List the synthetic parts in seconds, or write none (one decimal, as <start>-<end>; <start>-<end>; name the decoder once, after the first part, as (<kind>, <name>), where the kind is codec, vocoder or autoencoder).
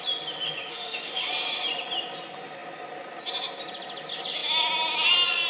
0.7-1.2 (autoencoder, DAC-VAE)